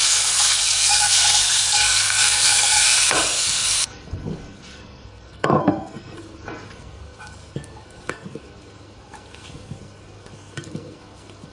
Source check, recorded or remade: remade